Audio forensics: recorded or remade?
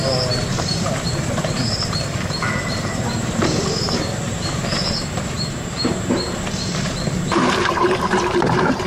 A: remade